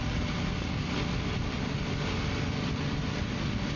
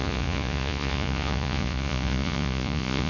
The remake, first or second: second